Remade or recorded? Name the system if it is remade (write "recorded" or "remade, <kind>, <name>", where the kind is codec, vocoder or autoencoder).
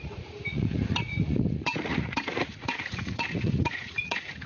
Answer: remade, vocoder, Vocos